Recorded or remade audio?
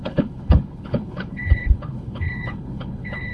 remade